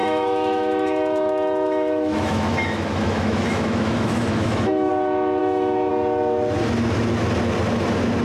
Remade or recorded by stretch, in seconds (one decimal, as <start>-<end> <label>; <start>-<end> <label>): 0.0-4.9 remade; 4.9-5.4 recorded; 5.4-5.9 remade; 5.9-8.2 recorded